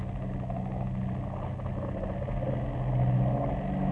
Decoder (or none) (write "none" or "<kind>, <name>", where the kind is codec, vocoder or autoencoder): none